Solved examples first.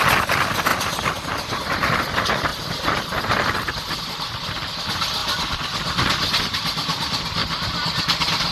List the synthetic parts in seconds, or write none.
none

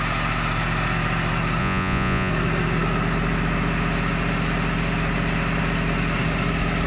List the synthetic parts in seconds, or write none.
1.6-2.3 (vocoder, Vocos)

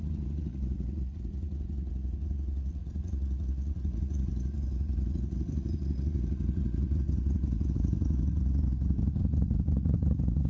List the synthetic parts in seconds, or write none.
0.0-10.5 (vocoder, Vocos)

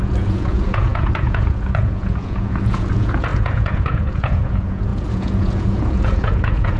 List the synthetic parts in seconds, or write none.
0.0-6.8 (vocoder, Vocos)

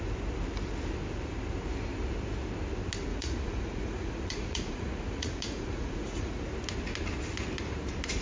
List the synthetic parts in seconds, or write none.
3.1-6.4 (vocoder, Vocos)